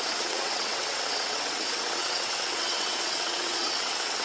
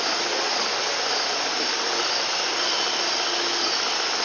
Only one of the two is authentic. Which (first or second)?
second